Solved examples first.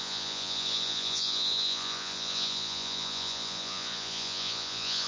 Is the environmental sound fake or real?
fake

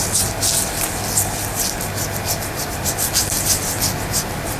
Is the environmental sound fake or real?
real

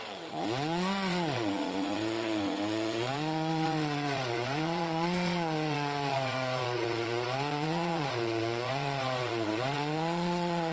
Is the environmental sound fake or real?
fake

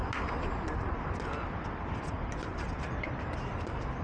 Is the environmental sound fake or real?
real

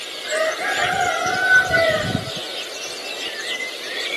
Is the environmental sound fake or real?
real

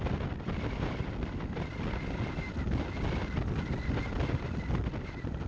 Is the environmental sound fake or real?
real